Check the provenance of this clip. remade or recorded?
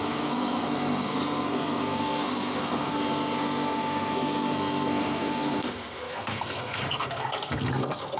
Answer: remade